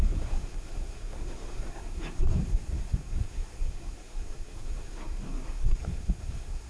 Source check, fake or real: fake